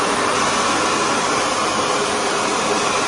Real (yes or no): yes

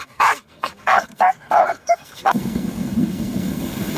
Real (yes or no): no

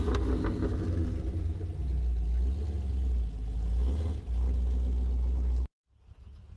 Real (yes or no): yes